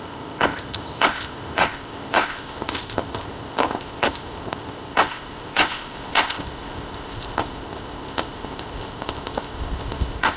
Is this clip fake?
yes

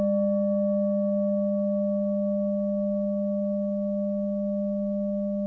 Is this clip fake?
no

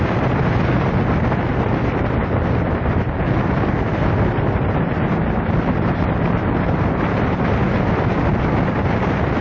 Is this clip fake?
no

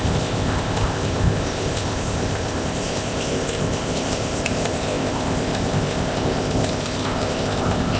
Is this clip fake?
yes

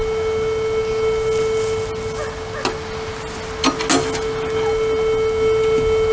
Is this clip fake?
no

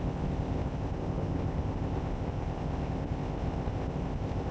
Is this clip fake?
yes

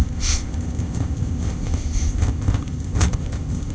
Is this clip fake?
yes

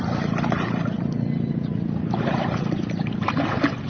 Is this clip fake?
no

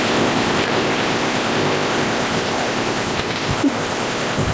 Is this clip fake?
yes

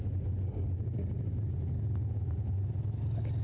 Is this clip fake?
no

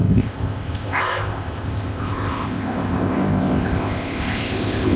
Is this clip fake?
yes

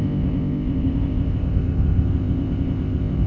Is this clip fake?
yes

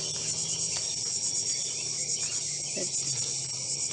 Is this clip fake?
no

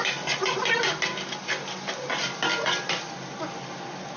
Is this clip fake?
no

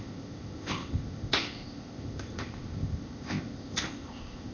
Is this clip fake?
yes